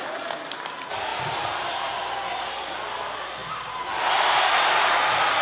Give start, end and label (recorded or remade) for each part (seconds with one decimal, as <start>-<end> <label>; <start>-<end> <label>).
0.0-5.4 recorded